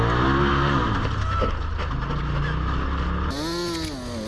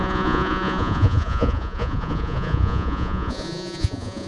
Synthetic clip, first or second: second